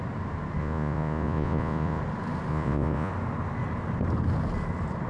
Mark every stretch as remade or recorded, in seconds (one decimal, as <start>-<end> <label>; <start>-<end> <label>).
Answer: 0.0-0.6 recorded; 0.6-2.0 remade; 2.0-2.5 recorded; 2.5-3.1 remade; 3.1-5.1 recorded